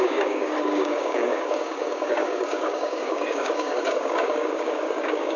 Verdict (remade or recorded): remade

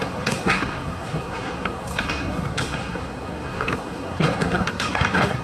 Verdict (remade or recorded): remade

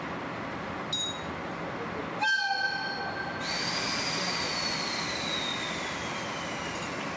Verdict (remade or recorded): recorded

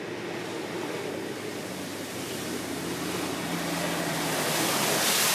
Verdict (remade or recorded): recorded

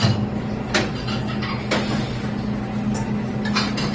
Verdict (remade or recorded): recorded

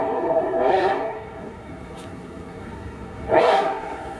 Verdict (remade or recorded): remade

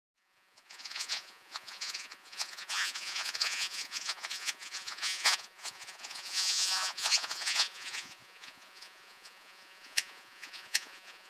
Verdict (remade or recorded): remade